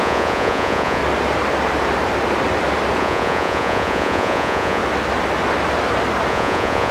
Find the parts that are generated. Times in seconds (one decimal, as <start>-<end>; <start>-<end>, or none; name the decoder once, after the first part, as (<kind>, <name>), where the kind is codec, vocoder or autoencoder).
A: 0.0-1.0 (vocoder, Vocos); 3.0-4.8; 6.3-6.9